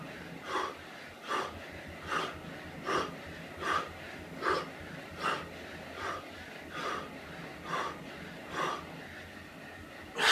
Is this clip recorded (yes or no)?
yes